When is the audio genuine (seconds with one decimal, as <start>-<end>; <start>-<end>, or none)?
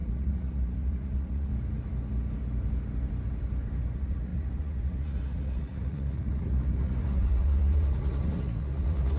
1.5-3.9